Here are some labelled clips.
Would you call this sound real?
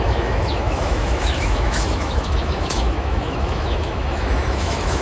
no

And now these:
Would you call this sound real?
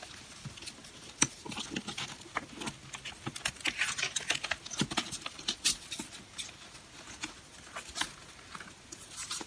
yes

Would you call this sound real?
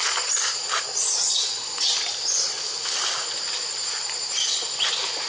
yes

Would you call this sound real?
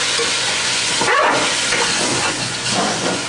no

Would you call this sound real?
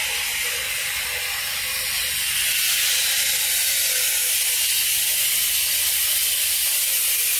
yes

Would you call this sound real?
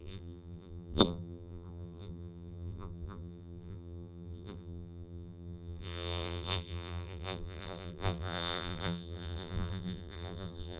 no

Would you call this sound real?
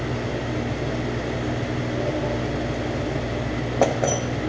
yes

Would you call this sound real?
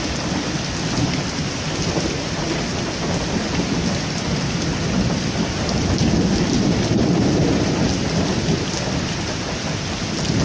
yes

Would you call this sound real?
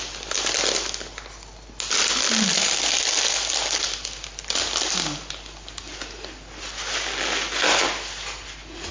yes